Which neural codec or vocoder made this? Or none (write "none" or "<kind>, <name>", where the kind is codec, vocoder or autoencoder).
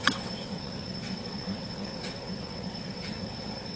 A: vocoder, WaveNeXt